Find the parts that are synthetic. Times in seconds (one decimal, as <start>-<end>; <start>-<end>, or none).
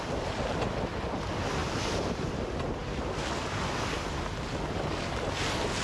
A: none